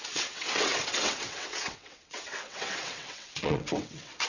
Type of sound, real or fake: fake